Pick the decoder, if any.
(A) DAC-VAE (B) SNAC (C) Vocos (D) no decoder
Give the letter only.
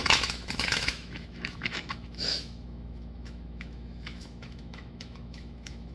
A